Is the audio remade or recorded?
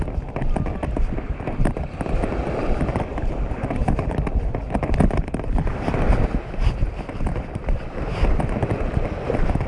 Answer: recorded